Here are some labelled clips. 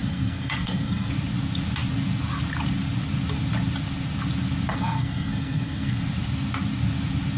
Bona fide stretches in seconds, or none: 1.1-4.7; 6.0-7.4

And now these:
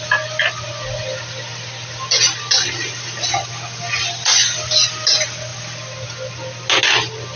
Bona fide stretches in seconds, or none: 0.0-7.4

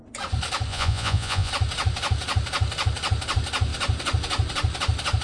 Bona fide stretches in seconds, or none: 0.0-0.7; 1.5-5.2